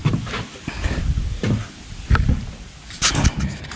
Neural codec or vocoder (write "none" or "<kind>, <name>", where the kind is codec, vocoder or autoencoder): none